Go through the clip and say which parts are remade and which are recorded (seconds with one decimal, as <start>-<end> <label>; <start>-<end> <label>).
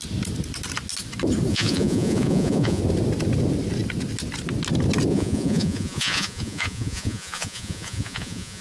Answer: 0.0-1.5 recorded; 1.5-2.8 remade; 2.8-5.1 recorded; 5.1-8.6 remade